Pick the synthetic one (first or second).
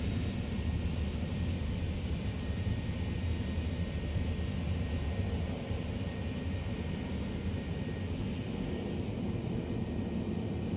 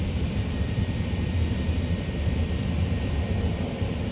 second